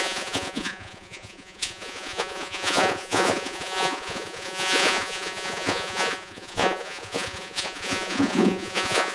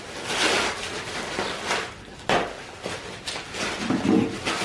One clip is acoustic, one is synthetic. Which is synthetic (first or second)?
first